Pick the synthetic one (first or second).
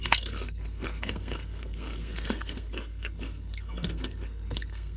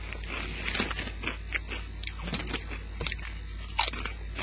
first